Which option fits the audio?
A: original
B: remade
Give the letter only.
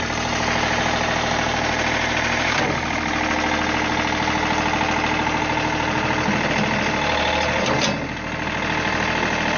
A